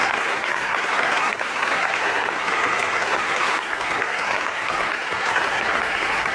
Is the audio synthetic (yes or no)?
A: yes